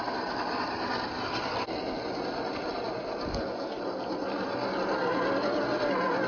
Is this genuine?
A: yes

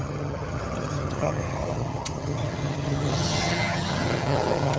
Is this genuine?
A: no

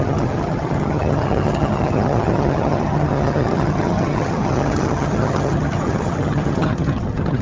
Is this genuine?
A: no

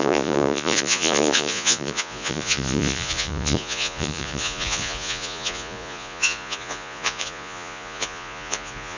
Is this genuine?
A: no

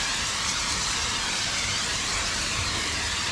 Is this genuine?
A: no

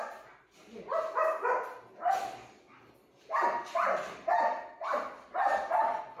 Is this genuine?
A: yes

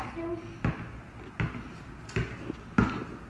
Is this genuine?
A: yes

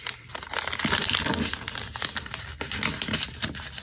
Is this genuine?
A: yes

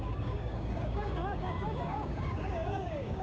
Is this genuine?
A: no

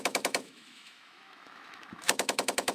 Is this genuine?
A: no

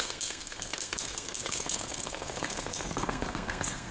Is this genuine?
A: no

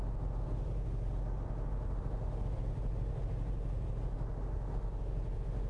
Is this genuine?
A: yes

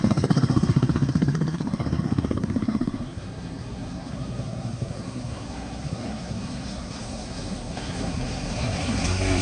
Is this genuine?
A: no